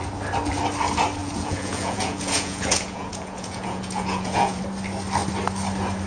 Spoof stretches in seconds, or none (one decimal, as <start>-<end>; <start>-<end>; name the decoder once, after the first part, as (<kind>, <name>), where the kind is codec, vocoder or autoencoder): 1.2-4.6 (vocoder, Vocos)